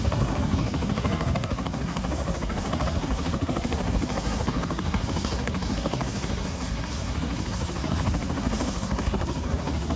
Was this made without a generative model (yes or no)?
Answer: no